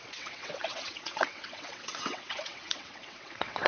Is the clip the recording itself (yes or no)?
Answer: no